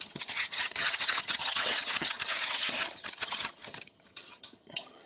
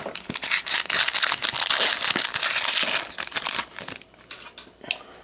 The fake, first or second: first